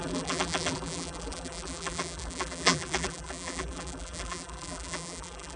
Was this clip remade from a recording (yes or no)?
yes